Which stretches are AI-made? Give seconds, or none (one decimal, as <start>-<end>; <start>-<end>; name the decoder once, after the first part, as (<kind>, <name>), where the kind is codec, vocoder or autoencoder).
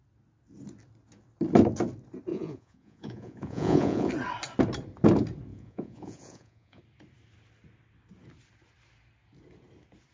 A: 2.3-4.1 (vocoder, Vocos); 5.5-6.8